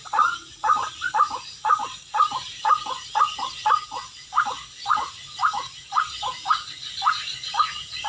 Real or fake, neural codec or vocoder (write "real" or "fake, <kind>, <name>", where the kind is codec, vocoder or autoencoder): fake, vocoder, Vocos